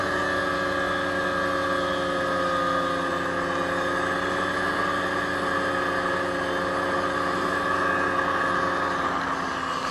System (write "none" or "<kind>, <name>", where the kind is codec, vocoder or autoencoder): none